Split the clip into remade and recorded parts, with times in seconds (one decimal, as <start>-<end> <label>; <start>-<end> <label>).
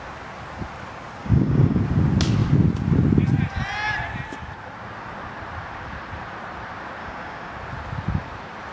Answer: 0.0-1.2 recorded; 1.2-1.8 remade; 1.8-7.0 recorded; 7.0-7.5 remade; 7.5-8.7 recorded